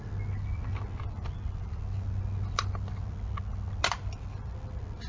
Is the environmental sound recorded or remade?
recorded